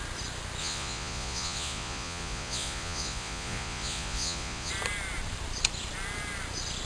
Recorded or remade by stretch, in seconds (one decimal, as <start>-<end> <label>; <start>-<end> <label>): 0.0-0.6 recorded; 0.6-4.7 remade; 4.7-6.9 recorded